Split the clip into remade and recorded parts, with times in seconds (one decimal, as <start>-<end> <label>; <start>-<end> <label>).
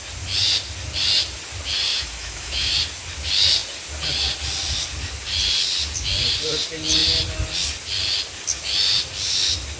0.0-1.9 recorded; 1.9-2.7 remade; 2.7-9.8 recorded